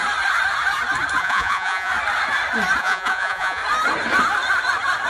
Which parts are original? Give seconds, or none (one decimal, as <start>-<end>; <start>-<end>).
0.0-1.2; 1.9-2.8; 3.6-5.1